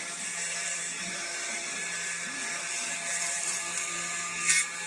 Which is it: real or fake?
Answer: fake